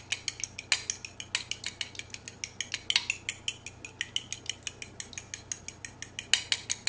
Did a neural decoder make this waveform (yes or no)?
no